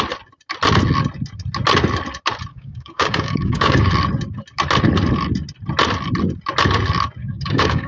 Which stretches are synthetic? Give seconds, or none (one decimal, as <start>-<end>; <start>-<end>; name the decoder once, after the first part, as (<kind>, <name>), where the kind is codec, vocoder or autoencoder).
2.5-3.9 (codec, DAC); 7.2-7.9